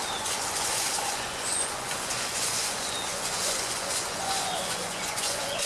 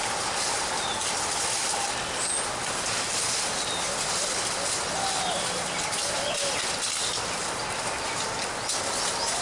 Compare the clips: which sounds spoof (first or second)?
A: first